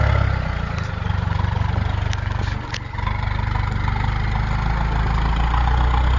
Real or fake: real